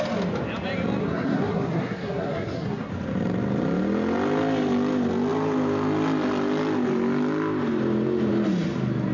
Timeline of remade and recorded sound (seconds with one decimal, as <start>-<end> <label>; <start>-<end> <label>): 0.0-1.0 recorded; 1.0-2.9 remade; 2.9-9.1 recorded